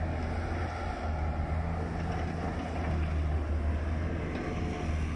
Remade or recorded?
recorded